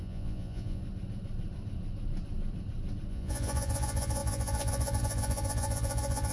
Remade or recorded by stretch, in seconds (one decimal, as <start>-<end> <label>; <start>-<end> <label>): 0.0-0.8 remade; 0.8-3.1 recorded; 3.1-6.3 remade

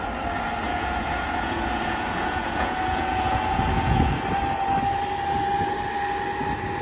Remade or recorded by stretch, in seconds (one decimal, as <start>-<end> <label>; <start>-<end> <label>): 0.0-0.7 recorded; 0.7-4.1 remade; 4.1-6.8 recorded

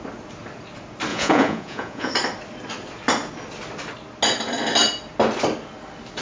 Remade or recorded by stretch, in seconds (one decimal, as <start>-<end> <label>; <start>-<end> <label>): 0.0-1.1 recorded; 1.1-2.1 remade; 2.1-6.2 recorded

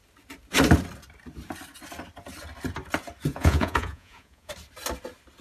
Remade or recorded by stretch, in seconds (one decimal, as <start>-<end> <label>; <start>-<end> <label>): 0.0-3.3 recorded; 3.3-4.5 remade; 4.5-5.4 recorded

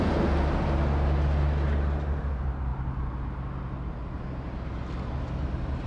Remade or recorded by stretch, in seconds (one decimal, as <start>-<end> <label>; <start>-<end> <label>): 0.0-5.9 recorded

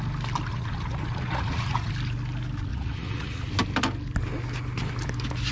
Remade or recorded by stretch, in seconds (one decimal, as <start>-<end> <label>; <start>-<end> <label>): 0.0-0.5 recorded; 0.5-1.9 remade; 1.9-2.7 recorded; 2.7-3.5 remade; 3.5-5.5 recorded